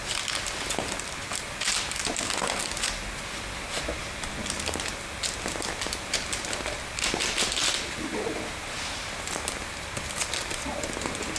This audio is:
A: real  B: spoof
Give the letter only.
A